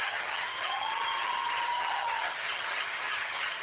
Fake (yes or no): yes